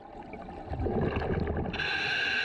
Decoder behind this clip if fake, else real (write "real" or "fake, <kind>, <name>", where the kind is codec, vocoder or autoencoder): real